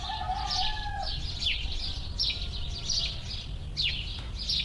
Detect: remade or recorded recorded